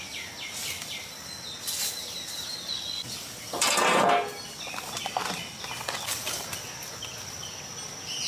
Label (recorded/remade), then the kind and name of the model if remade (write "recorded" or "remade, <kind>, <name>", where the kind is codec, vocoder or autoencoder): recorded